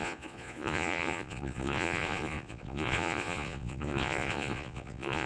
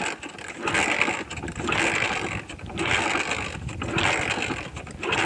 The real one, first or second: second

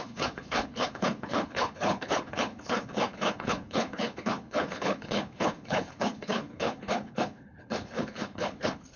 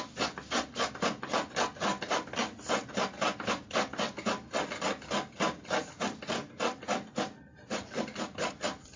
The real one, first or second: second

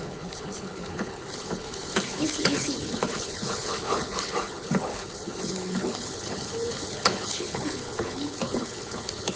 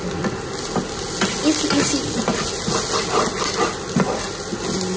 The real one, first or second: second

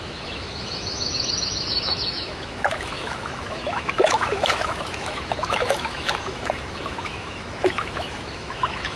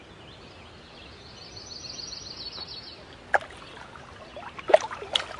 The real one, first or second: second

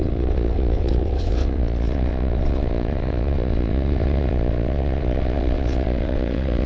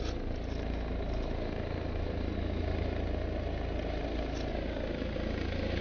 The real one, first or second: second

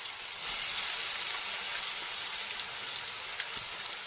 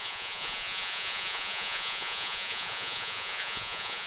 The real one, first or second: first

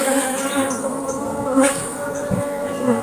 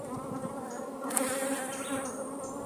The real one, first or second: second